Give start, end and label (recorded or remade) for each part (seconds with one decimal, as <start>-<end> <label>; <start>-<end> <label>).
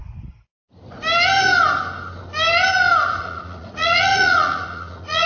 0.0-3.2 recorded; 3.2-5.3 remade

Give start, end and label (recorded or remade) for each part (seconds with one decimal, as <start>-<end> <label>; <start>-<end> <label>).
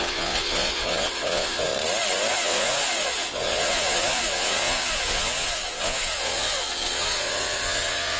0.0-1.7 remade; 1.7-2.3 recorded; 2.3-8.2 remade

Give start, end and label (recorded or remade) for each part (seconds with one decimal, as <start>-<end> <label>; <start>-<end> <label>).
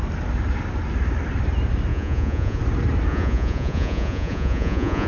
0.0-1.9 recorded; 1.9-2.6 remade; 2.6-3.1 recorded; 3.1-5.1 remade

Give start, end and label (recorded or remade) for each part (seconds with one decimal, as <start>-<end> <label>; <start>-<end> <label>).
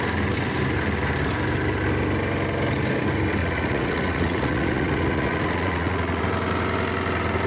0.0-3.4 recorded; 3.4-6.2 remade; 6.2-7.5 recorded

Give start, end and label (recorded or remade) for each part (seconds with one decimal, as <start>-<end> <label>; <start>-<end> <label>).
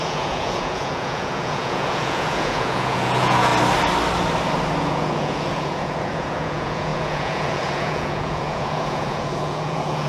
0.0-3.5 remade; 3.5-4.8 recorded; 4.8-10.1 remade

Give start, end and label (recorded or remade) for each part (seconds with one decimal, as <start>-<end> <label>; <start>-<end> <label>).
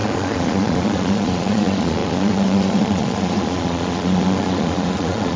0.0-5.4 remade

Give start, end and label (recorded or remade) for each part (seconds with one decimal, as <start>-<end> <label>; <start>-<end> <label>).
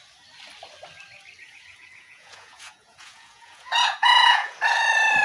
0.0-1.5 recorded; 1.5-4.6 remade; 4.6-5.2 recorded